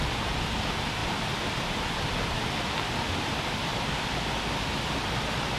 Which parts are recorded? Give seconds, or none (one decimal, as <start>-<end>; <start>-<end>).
0.0-1.0; 1.6-5.6